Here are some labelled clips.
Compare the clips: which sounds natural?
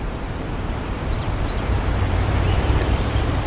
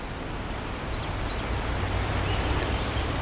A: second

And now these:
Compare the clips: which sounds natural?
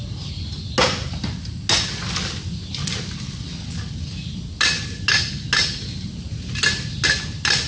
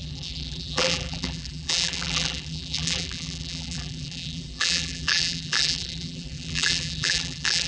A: first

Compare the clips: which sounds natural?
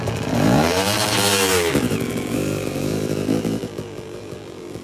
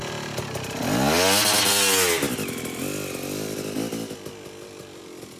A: second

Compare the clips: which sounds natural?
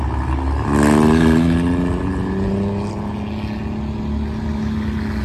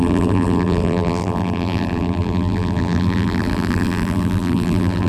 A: first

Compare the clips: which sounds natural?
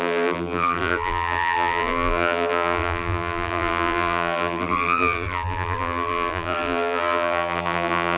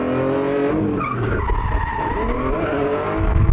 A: second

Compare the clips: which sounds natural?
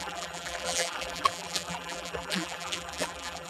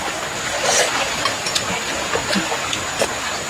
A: second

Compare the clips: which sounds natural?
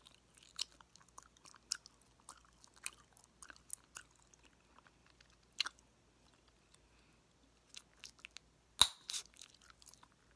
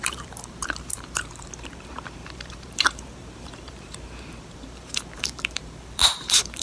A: first